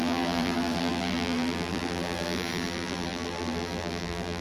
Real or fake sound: fake